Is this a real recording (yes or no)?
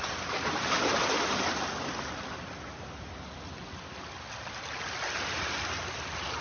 yes